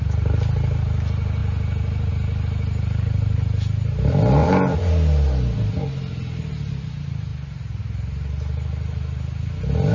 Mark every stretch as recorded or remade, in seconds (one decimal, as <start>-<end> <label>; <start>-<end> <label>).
0.0-4.4 recorded; 4.4-4.9 remade; 4.9-9.9 recorded